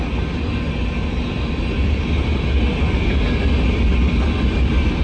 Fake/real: real